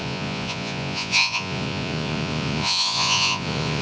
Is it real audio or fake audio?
fake